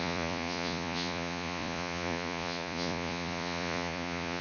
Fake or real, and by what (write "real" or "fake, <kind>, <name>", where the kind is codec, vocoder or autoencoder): fake, vocoder, Vocos